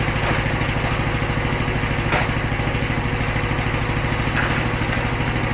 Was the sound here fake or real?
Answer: real